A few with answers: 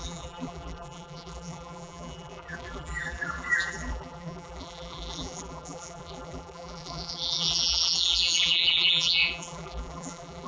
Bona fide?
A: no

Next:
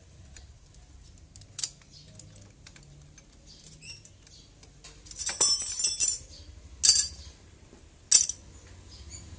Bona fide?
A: yes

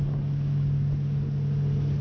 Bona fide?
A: yes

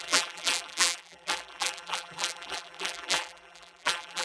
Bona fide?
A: no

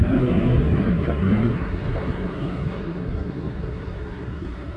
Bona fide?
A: no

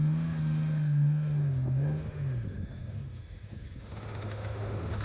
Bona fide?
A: no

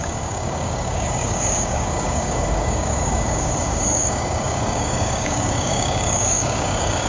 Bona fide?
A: no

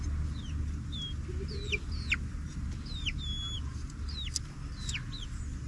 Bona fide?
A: yes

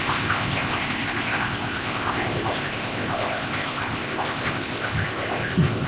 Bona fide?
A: no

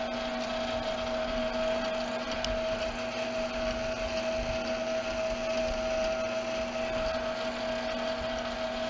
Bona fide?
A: yes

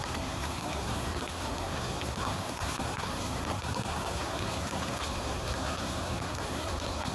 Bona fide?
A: no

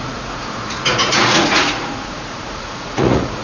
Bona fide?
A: no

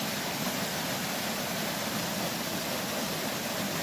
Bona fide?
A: yes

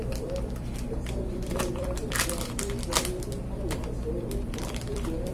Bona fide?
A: no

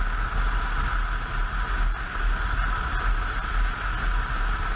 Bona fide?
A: yes